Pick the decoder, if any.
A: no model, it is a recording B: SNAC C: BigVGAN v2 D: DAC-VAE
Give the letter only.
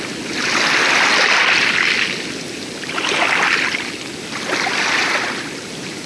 A